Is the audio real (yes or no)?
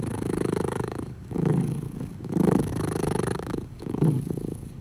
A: no